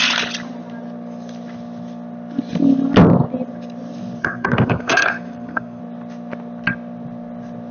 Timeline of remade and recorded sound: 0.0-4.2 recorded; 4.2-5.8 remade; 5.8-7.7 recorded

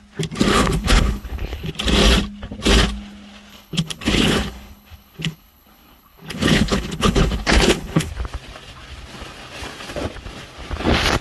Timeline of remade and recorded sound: 0.0-0.5 recorded; 0.5-1.7 remade; 1.7-3.5 recorded; 3.5-8.1 remade; 8.1-11.2 recorded

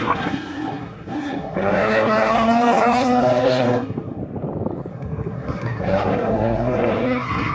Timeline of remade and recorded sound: 0.0-4.2 remade; 4.2-4.9 recorded; 4.9-7.5 remade

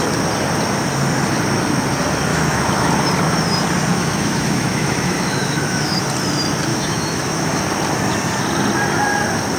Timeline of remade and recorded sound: 0.0-2.3 recorded; 2.3-2.9 remade; 2.9-3.9 recorded; 3.9-6.0 remade; 6.0-6.7 recorded; 6.7-7.6 remade; 7.6-9.6 recorded

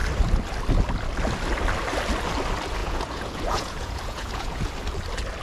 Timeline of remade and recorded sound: 0.0-2.8 recorded; 2.8-4.7 remade; 4.7-5.4 recorded